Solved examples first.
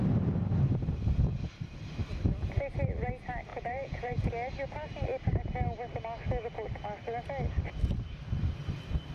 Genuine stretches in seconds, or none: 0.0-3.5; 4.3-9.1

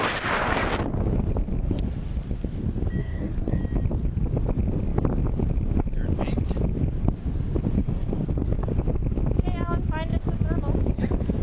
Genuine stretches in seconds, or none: 0.0-3.0; 3.6-7.8; 8.7-11.4

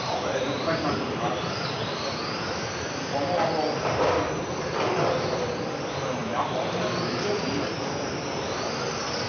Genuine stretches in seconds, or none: 6.2-7.3